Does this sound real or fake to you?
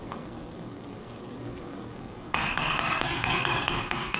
fake